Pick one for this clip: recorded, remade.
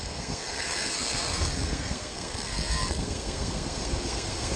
remade